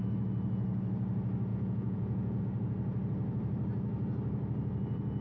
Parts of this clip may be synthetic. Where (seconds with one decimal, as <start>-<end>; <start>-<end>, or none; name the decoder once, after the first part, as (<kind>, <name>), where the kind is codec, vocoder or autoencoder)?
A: 1.5-2.4 (vocoder, Vocos)